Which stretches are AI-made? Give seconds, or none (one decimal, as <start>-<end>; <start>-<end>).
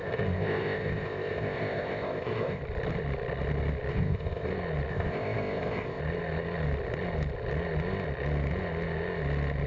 0.0-2.6; 3.9-4.5; 4.9-6.0